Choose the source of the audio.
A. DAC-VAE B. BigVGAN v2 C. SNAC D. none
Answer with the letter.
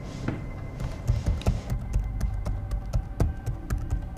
D